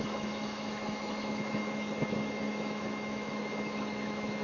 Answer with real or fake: fake